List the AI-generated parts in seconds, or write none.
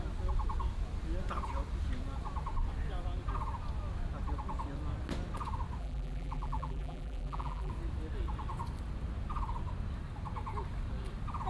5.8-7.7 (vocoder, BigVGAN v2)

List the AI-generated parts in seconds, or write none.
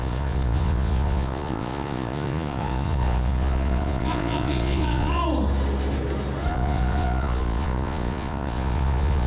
0.0-5.2 (vocoder, Vocos); 6.5-9.3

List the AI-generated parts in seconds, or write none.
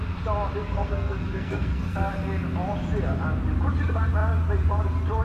0.6-2.1 (codec, SNAC)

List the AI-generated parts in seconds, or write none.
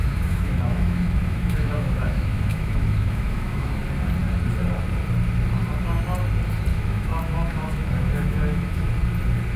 0.0-3.8 (autoencoder, DAC-VAE); 6.7-8.9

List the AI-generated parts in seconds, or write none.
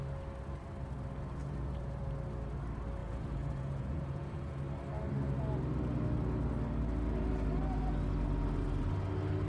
1.4-2.1 (vocoder, Vocos); 3.0-4.6